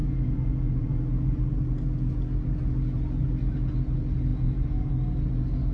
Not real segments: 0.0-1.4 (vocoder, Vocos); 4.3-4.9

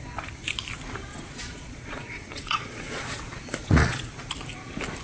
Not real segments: 1.1-4.1 (vocoder, Vocos)

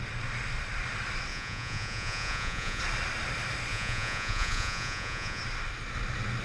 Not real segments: 1.3-2.8 (vocoder, Vocos); 3.7-5.4

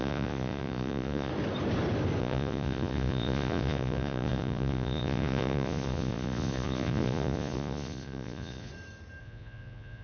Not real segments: 0.0-1.3 (vocoder, Vocos); 2.2-8.7; 9.2-10.0